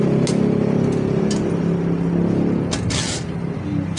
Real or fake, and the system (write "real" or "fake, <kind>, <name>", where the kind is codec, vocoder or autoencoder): real